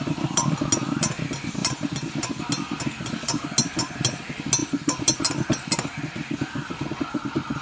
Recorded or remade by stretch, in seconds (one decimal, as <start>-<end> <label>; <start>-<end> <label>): 0.0-7.6 recorded